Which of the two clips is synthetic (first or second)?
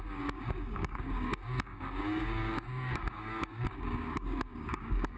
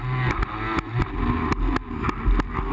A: first